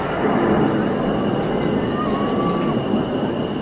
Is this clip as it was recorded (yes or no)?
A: yes